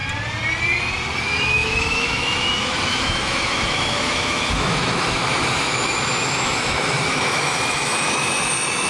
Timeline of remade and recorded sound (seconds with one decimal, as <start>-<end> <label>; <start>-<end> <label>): 0.0-1.2 recorded; 1.2-8.9 remade

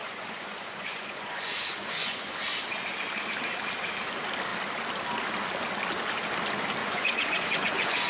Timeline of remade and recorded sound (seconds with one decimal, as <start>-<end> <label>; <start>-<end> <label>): 0.0-2.4 remade; 2.4-6.8 recorded; 6.8-8.1 remade

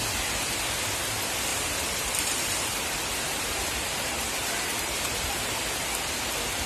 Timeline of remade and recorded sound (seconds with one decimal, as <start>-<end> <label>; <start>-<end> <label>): 0.0-1.5 recorded; 1.5-5.5 remade; 5.5-6.7 recorded

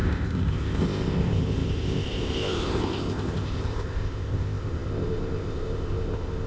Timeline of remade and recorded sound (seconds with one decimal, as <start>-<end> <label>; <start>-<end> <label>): 0.0-6.5 remade

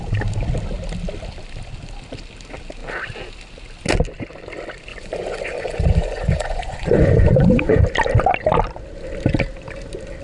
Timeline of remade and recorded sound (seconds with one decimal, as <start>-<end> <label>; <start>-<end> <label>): 0.0-4.9 recorded; 4.9-7.8 remade; 7.8-10.2 recorded

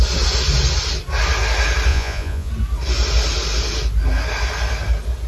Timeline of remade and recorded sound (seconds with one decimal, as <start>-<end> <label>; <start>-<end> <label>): 0.0-1.9 recorded; 1.9-2.5 remade; 2.5-5.3 recorded